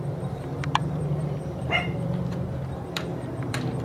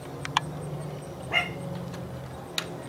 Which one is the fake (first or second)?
first